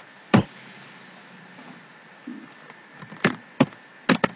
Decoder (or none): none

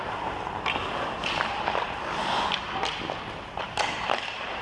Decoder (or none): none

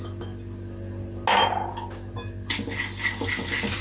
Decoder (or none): none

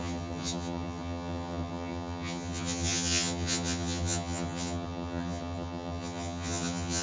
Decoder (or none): vocoder, HiFi-GAN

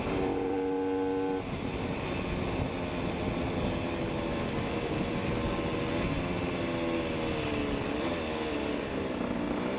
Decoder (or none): none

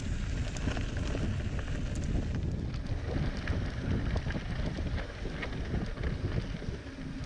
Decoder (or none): none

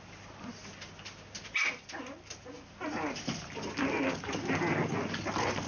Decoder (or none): none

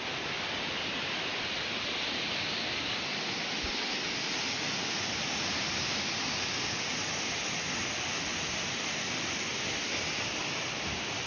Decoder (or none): none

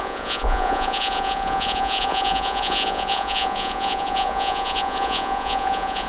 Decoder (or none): vocoder, Vocos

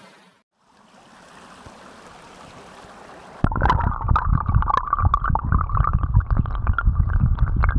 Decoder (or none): none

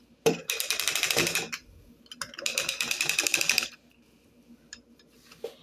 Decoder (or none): vocoder, BigVGAN v2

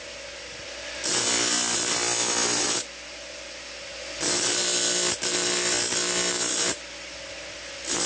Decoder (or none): none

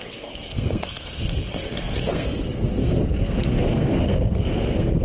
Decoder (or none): codec, SNAC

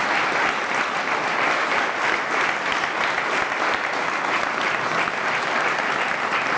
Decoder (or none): none